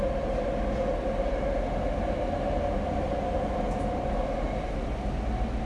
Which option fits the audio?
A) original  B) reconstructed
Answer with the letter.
A